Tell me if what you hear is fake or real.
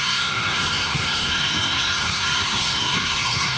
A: fake